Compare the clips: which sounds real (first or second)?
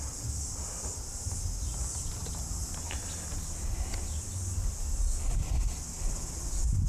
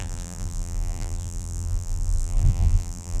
first